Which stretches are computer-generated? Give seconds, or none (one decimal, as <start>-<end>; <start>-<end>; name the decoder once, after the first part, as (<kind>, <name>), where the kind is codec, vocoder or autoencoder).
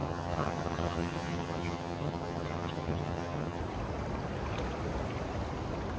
0.0-3.6 (vocoder, HiFi-GAN)